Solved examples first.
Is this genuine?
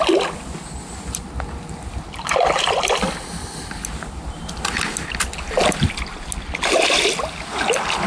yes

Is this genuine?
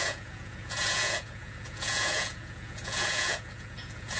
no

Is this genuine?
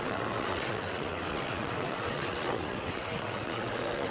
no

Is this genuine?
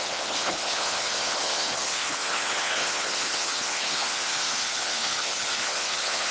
no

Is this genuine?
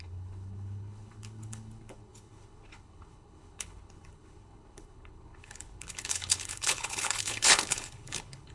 no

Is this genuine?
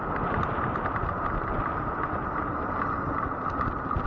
yes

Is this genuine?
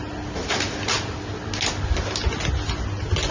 yes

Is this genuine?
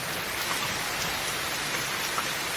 yes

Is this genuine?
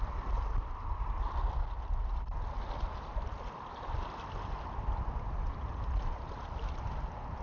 yes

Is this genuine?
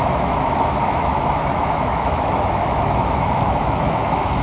no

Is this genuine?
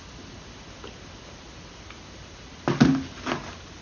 yes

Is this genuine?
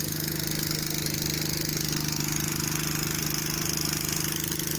yes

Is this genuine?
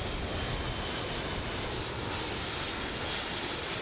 yes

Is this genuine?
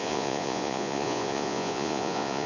no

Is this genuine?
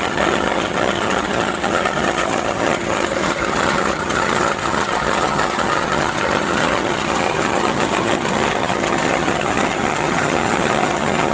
no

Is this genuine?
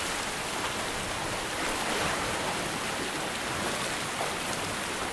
yes